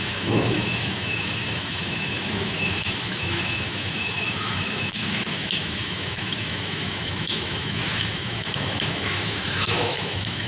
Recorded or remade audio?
remade